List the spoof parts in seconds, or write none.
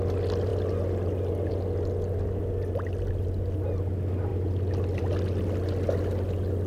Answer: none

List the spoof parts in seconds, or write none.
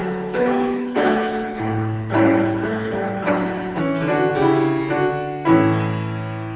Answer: 0.0-3.8